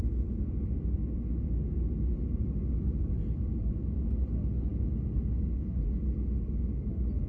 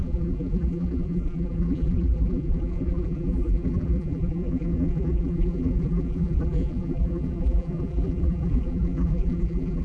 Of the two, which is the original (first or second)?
first